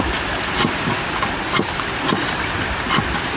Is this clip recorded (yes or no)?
yes